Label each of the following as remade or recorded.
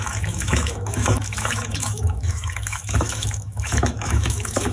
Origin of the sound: remade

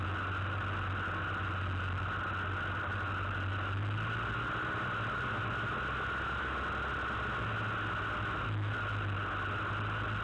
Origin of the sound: recorded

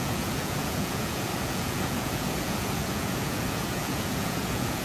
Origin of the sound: remade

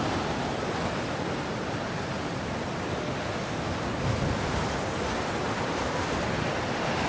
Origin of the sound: recorded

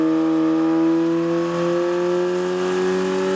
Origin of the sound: recorded